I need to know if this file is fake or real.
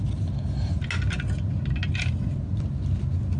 real